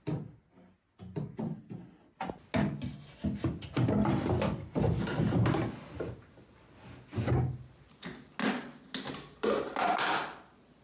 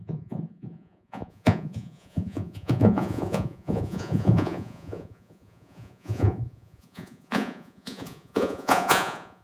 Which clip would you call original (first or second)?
first